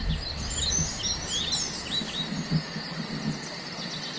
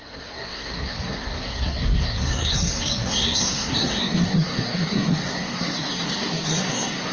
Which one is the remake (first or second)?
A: second